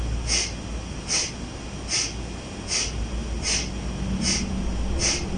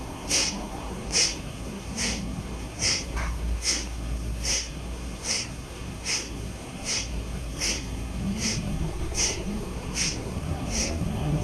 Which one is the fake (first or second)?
second